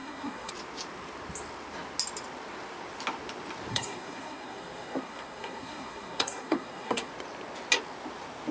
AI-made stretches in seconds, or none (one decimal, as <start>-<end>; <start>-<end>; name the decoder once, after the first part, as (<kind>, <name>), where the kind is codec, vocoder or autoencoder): 0.0-0.5 (codec, SNAC); 3.7-7.1